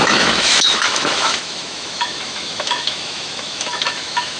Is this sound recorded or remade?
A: remade